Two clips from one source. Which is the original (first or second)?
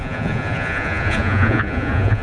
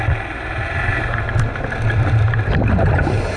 second